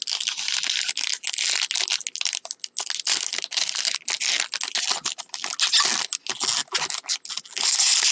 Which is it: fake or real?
real